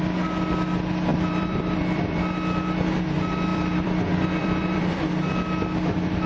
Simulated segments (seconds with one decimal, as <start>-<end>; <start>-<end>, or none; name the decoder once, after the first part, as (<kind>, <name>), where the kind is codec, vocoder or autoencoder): 1.1-2.2 (vocoder, BigVGAN v2); 3.5-4.0; 4.4-5.1